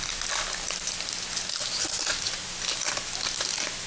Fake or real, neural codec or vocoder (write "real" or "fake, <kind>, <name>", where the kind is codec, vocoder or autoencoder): real